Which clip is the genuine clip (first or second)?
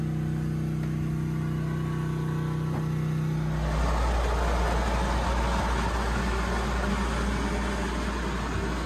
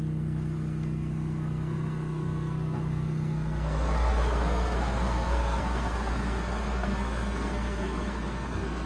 first